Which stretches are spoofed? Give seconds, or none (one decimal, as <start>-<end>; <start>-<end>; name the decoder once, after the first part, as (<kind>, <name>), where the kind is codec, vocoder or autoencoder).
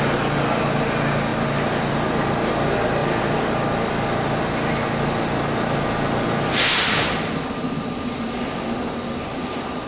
none